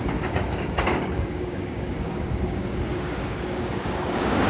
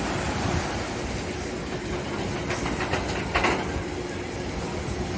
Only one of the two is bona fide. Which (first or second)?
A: second